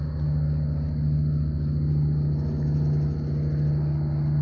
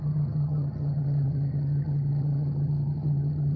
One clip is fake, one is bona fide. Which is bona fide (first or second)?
first